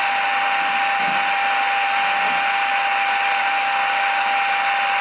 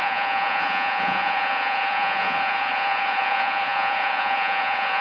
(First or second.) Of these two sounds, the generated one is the second